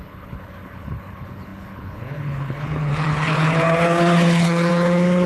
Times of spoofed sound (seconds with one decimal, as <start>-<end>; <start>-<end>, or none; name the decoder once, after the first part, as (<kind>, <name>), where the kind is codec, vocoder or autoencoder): 0.0-5.3 (codec, HILCodec)